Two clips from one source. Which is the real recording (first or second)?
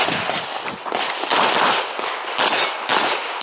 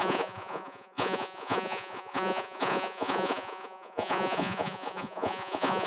first